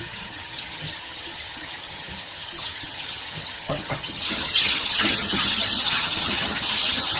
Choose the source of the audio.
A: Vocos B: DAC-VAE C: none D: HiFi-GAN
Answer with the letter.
D